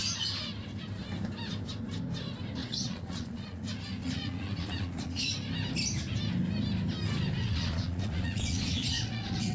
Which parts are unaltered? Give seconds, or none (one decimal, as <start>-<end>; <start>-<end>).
0.0-2.6; 3.6-4.0; 5.3-7.4